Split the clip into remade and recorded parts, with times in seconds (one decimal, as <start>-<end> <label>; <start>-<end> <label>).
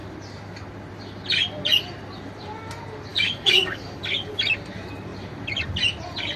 0.0-3.1 recorded; 3.1-4.0 remade; 4.0-6.4 recorded